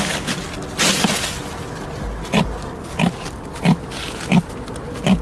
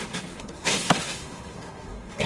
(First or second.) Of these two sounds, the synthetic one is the second